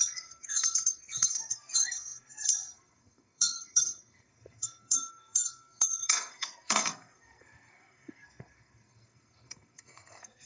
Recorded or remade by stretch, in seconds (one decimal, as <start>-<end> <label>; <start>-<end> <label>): 0.0-10.5 remade